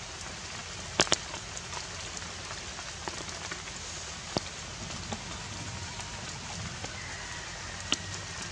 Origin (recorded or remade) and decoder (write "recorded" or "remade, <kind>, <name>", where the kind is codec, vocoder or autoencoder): recorded